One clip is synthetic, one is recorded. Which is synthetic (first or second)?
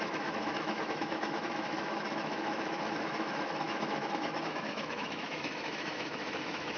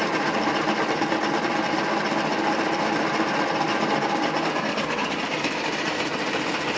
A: first